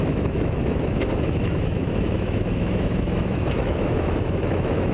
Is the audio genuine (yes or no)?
no